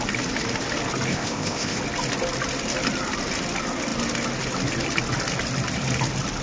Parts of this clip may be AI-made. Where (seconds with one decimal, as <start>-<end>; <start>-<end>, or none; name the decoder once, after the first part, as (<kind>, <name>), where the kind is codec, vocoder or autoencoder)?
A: 1.1-1.8 (codec, ZipCodec)